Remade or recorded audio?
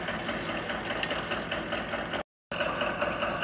recorded